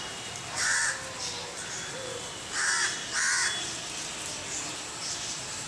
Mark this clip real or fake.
real